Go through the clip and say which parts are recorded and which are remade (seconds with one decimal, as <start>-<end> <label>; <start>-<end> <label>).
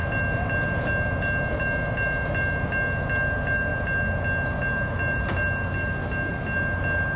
0.0-7.2 recorded